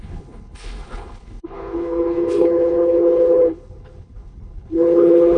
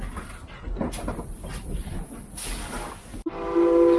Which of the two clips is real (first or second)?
second